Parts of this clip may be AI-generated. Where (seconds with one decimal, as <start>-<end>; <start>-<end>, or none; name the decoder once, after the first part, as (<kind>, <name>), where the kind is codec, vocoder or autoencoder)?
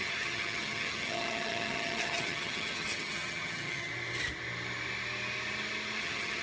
0.0-3.9 (vocoder, HiFi-GAN); 6.0-6.4